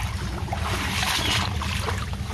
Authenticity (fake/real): real